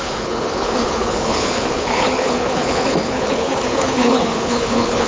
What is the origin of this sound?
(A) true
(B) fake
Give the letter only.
B